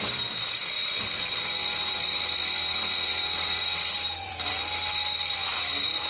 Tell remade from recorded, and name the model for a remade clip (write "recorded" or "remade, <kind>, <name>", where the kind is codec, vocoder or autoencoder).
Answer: remade, vocoder, BigVGAN v2